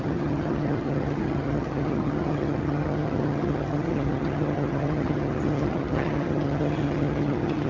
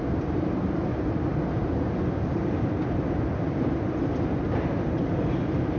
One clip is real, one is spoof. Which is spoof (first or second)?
first